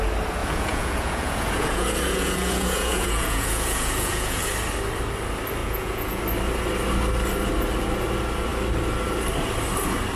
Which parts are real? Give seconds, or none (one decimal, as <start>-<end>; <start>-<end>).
0.0-0.4; 4.4-5.6; 6.2-10.2